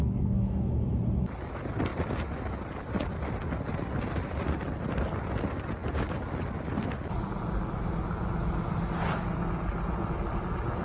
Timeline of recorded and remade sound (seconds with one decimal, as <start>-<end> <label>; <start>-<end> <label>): 0.0-0.7 remade; 0.7-10.8 recorded